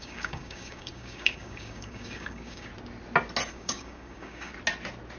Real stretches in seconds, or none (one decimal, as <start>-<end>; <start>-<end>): 2.7-3.5; 4.5-5.2